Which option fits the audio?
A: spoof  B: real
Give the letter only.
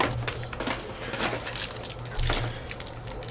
B